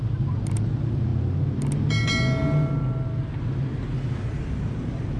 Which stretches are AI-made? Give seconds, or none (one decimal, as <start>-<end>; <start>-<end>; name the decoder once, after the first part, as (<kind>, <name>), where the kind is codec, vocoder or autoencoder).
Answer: none